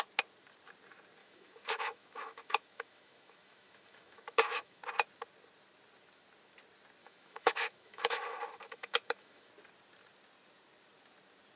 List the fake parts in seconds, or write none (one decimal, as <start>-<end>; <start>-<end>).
1.2-4.8; 7.0-9.5

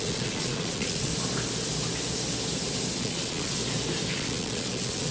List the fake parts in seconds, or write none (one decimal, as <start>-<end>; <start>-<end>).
0.0-1.1; 3.0-3.6; 4.1-5.1

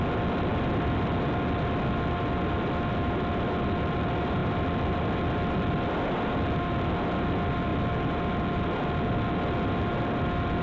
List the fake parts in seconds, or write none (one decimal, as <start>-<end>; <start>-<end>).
none

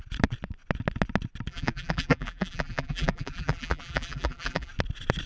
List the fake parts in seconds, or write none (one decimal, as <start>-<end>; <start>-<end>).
1.5-4.7

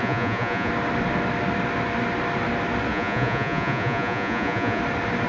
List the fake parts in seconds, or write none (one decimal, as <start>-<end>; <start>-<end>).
0.0-0.7; 2.9-4.8

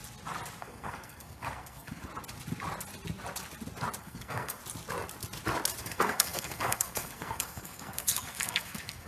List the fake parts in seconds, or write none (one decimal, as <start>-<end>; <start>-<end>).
0.6-2.1; 4.0-4.6; 5.8-9.1

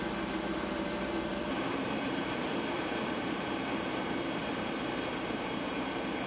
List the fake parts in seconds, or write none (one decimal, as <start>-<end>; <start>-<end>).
0.0-6.3

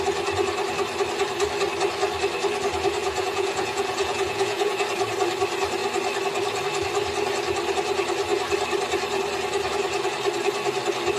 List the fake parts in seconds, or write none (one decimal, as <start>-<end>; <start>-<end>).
3.0-4.8